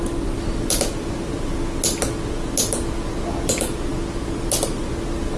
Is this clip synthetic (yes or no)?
no